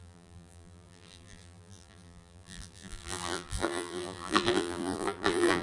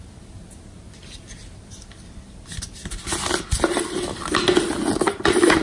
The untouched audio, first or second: second